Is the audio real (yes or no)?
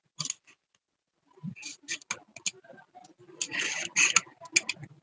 yes